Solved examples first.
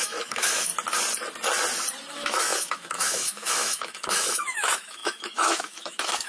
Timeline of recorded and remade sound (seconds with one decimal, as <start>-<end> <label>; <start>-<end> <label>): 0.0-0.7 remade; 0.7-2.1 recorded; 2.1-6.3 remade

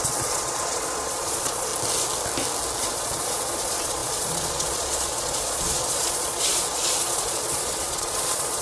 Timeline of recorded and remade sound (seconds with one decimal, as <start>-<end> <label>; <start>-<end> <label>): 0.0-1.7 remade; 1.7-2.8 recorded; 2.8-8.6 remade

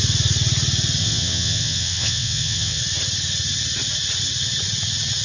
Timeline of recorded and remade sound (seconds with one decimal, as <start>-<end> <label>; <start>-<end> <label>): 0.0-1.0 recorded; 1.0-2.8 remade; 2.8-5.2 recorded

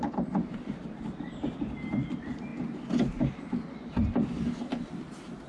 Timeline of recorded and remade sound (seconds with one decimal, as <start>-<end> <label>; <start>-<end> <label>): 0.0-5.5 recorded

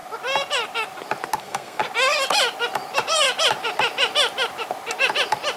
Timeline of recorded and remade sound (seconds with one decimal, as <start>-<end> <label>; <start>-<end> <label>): 0.0-1.4 recorded; 1.4-1.8 remade; 1.8-5.6 recorded

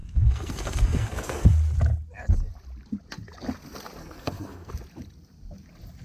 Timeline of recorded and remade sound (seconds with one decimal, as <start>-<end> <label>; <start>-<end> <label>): 0.0-1.5 remade; 1.5-4.0 recorded; 4.0-4.7 remade; 4.7-6.0 recorded

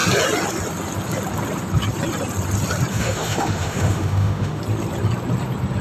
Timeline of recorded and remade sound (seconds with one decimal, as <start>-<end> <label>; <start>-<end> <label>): 0.0-2.9 recorded; 2.9-4.6 remade; 4.6-5.8 recorded